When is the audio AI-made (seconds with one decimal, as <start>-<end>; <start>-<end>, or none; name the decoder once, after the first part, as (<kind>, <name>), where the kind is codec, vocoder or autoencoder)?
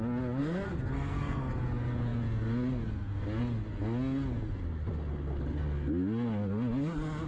0.4-1.5 (codec, SNAC)